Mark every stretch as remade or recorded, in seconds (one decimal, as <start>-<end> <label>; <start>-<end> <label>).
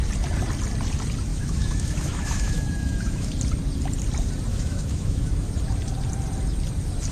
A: 0.0-1.3 recorded; 1.3-3.3 remade; 3.3-4.5 recorded; 4.5-5.5 remade; 5.5-7.1 recorded